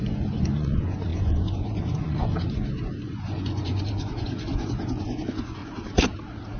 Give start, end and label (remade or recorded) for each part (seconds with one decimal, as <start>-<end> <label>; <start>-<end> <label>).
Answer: 0.0-5.6 remade; 5.6-6.6 recorded